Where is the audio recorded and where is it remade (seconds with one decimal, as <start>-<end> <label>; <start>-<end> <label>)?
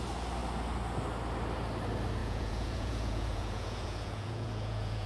0.0-2.2 recorded; 2.2-5.1 remade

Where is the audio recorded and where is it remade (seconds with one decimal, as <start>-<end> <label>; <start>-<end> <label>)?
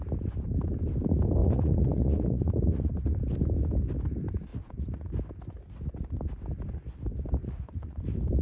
0.0-1.4 recorded; 1.4-2.9 remade; 2.9-4.5 recorded; 4.5-5.1 remade; 5.1-7.4 recorded; 7.4-8.0 remade; 8.0-8.4 recorded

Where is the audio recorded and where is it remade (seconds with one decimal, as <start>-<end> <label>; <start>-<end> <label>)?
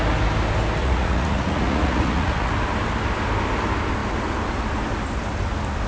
0.0-0.8 recorded; 0.8-2.5 remade; 2.5-5.9 recorded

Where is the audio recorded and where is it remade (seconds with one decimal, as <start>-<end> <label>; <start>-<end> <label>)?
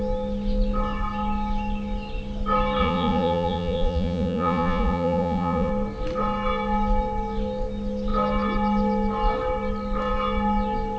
0.0-2.8 recorded; 2.8-5.7 remade; 5.7-11.0 recorded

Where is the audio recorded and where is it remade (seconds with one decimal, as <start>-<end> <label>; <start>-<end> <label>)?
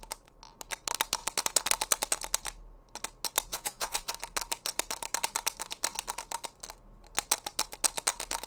0.0-3.5 recorded; 3.5-4.1 remade; 4.1-8.5 recorded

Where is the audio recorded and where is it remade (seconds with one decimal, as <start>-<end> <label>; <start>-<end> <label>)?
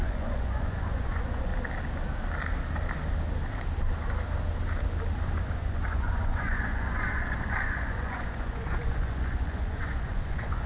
0.0-1.5 remade; 1.5-5.4 recorded; 5.4-10.7 remade